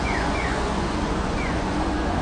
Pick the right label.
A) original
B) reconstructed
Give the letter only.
B